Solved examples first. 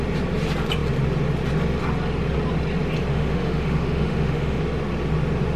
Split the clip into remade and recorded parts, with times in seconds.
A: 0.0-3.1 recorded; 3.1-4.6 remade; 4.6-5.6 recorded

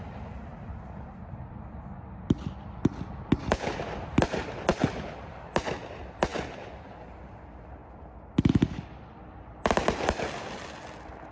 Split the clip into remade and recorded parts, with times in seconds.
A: 0.0-11.3 recorded

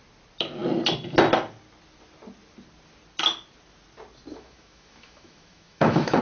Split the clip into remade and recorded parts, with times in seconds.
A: 0.0-4.3 recorded; 4.3-6.2 remade